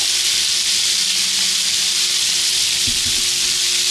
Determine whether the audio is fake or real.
real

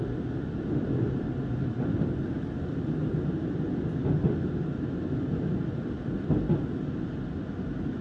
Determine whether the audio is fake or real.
real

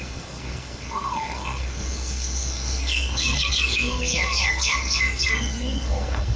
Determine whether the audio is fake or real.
fake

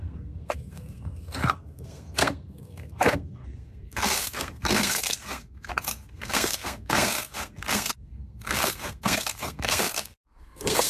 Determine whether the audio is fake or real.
fake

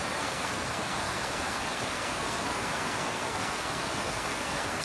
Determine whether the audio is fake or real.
fake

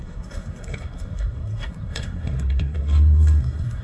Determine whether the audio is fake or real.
fake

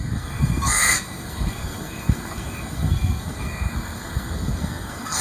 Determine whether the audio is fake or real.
fake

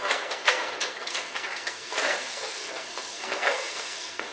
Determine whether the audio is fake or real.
fake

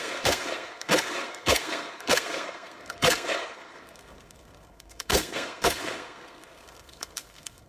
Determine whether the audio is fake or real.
fake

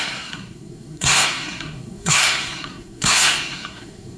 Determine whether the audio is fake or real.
fake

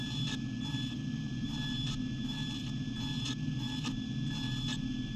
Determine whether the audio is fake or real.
real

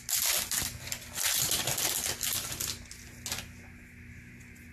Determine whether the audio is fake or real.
real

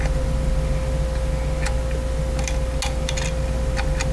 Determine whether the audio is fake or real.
real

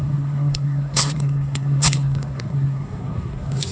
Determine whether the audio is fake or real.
fake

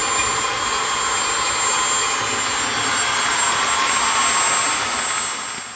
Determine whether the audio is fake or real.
real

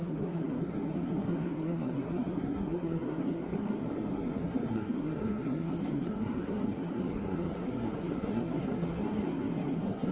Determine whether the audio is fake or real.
fake